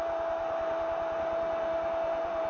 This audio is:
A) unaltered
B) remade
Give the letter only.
A